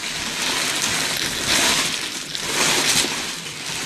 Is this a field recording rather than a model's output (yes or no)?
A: yes